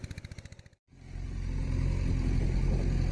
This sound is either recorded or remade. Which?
recorded